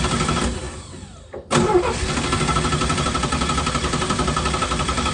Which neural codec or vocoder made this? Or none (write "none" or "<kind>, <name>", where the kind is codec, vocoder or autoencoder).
none